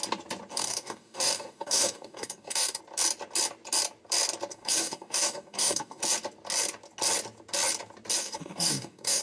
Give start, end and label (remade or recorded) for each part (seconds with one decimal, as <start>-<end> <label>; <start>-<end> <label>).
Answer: 0.0-0.5 recorded; 0.5-2.8 remade; 2.8-4.5 recorded; 4.5-6.0 remade; 6.0-8.2 recorded; 8.2-9.2 remade